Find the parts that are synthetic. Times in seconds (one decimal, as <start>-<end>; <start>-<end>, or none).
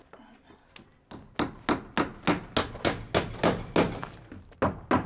none